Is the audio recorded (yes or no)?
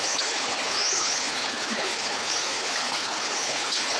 no